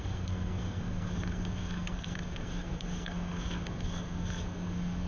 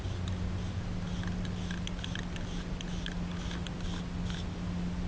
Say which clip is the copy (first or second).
first